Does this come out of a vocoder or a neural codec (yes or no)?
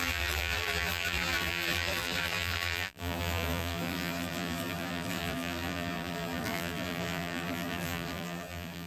yes